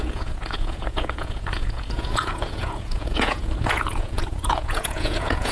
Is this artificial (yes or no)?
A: yes